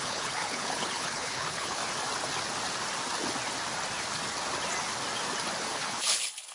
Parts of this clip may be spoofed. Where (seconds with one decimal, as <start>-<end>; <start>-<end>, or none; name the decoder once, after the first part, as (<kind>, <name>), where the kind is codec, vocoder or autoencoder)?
0.0-1.8 (codec, HILCodec); 5.7-6.5